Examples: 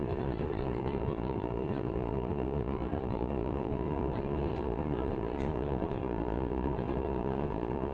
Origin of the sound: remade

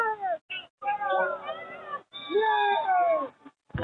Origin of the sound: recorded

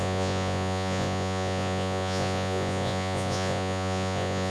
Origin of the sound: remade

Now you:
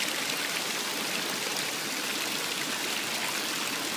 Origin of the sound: recorded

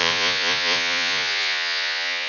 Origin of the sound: remade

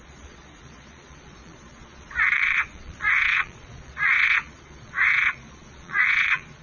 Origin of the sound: remade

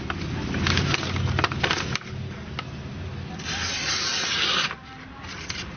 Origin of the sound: recorded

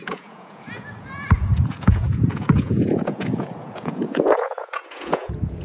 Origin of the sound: remade